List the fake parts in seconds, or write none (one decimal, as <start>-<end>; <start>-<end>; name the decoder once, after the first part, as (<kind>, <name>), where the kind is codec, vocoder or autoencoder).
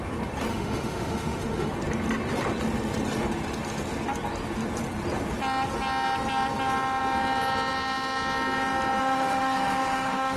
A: 0.5-1.7 (autoencoder, DAC-VAE); 9.0-10.4